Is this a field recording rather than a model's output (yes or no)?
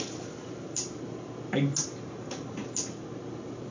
yes